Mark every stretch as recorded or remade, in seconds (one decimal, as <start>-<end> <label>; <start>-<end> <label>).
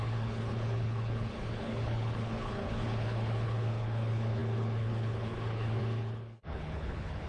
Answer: 0.0-7.3 remade